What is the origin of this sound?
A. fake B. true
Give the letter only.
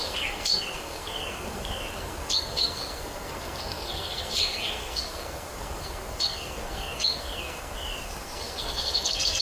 A